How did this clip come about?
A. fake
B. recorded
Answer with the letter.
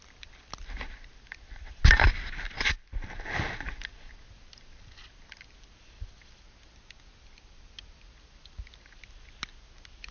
B